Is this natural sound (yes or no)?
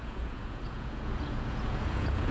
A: no